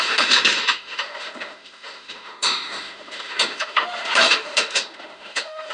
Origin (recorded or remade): remade